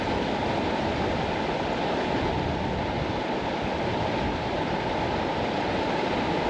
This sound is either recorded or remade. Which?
recorded